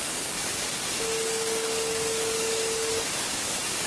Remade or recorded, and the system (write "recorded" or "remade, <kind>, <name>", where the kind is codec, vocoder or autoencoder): remade, codec, DAC